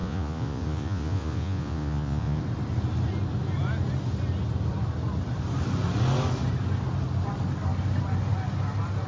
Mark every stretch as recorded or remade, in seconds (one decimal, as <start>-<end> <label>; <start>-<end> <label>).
0.0-2.4 remade; 2.4-9.1 recorded